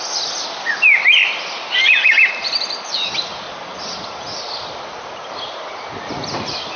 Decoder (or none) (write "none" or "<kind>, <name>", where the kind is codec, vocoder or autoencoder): none